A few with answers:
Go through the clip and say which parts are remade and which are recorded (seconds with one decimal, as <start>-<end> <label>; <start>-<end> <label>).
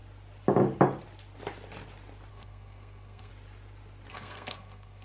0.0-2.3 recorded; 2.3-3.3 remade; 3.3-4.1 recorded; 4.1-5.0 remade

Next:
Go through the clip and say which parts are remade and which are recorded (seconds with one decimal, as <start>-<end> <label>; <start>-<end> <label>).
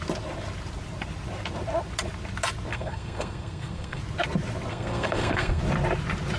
0.0-2.7 recorded; 2.7-4.0 remade; 4.0-4.7 recorded; 4.7-5.6 remade; 5.6-6.4 recorded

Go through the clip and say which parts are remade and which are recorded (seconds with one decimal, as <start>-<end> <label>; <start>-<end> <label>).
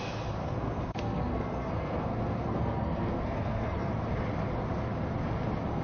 0.0-0.4 recorded; 0.4-3.9 remade; 3.9-5.8 recorded